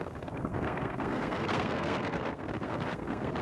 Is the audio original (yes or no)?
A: no